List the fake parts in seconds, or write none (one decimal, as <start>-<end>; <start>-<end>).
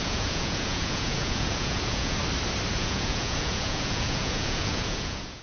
0.0-2.2; 2.7-5.4